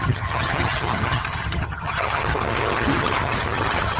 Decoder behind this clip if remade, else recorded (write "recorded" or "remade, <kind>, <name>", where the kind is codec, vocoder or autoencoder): remade, vocoder, HiFi-GAN